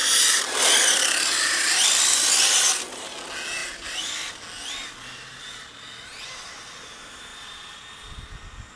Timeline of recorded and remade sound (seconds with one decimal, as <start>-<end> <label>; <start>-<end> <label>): 0.0-2.3 remade; 2.3-3.6 recorded; 3.6-4.3 remade; 4.3-8.8 recorded

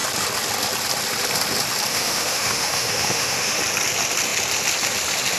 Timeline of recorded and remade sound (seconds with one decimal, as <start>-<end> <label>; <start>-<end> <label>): 0.0-1.9 recorded; 1.9-3.6 remade; 3.6-5.4 recorded

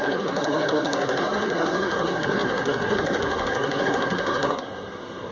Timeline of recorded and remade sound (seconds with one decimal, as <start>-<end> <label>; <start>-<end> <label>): 0.0-5.3 remade

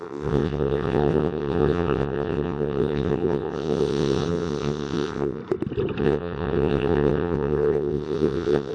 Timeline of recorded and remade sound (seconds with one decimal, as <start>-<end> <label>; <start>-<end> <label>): 0.0-5.4 remade; 5.4-6.0 recorded; 6.0-8.7 remade

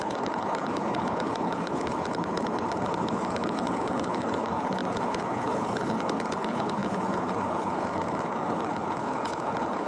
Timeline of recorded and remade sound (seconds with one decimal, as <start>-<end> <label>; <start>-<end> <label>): 0.0-9.9 remade

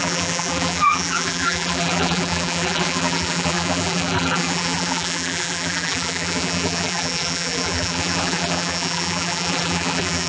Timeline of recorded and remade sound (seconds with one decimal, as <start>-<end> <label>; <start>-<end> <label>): 0.0-10.3 remade